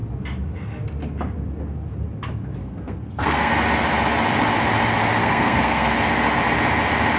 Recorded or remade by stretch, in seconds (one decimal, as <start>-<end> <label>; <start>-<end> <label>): 0.0-2.6 recorded; 2.6-3.5 remade; 3.5-5.2 recorded; 5.2-5.9 remade; 5.9-7.2 recorded